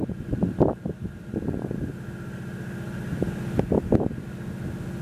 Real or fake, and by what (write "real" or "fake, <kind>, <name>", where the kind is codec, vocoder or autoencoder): real